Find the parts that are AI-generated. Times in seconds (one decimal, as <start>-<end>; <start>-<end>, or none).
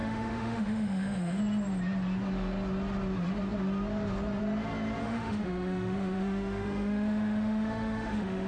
0.0-1.4; 5.0-8.5